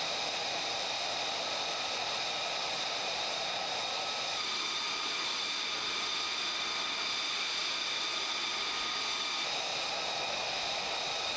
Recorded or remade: recorded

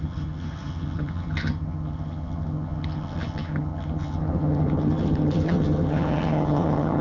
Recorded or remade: remade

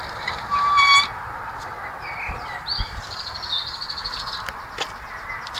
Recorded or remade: remade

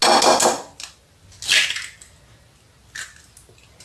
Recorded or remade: recorded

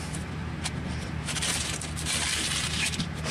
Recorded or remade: remade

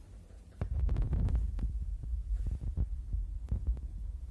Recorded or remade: remade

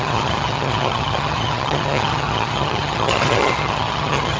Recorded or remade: remade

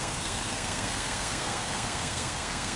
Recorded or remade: remade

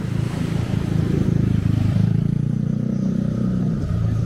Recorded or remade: remade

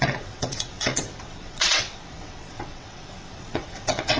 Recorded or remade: remade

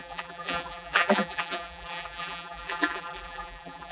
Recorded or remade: remade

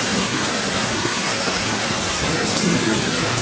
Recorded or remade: remade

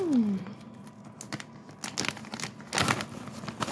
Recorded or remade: recorded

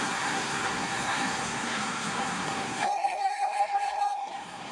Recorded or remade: remade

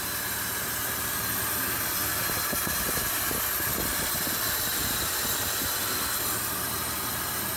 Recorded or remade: recorded